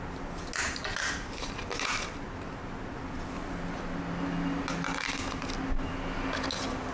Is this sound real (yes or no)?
yes